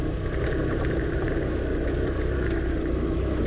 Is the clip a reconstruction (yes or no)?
no